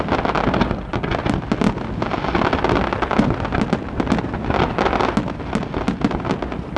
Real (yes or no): yes